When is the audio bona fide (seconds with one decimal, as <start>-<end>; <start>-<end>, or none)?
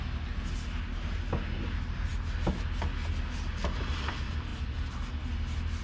0.0-5.8